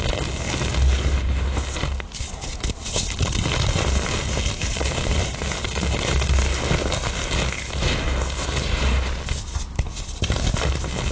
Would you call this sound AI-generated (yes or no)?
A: no